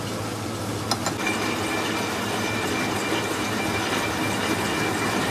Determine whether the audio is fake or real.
real